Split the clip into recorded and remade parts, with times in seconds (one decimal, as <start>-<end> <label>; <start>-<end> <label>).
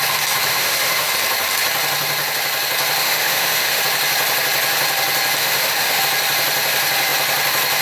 0.0-0.5 recorded; 0.5-1.1 remade; 1.1-3.0 recorded; 3.0-3.8 remade; 3.8-5.4 recorded; 5.4-6.0 remade; 6.0-7.8 recorded